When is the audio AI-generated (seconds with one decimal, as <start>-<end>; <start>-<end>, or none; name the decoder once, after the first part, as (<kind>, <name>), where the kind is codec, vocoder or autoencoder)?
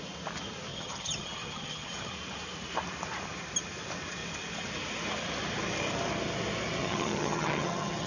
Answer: 0.7-2.1 (vocoder, HiFi-GAN); 6.8-8.1